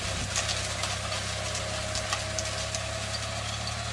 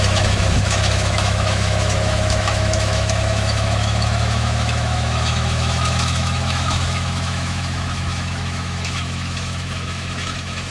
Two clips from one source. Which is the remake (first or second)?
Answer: second